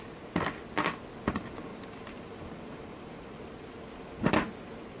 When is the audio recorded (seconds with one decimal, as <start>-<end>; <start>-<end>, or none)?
0.0-1.7; 3.4-5.0